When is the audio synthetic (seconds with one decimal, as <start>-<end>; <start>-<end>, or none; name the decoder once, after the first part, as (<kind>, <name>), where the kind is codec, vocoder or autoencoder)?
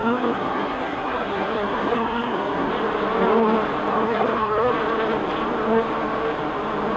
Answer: 0.0-2.7 (codec, SNAC); 3.9-4.7